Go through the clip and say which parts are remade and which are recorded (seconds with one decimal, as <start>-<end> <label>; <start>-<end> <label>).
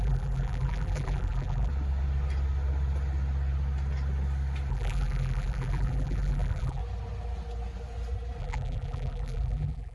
0.0-1.7 remade; 1.7-4.7 recorded; 4.7-6.8 remade; 6.8-8.4 recorded; 8.4-9.9 remade